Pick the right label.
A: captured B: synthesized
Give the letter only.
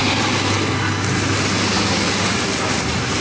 A